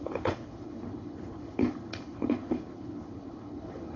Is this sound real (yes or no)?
no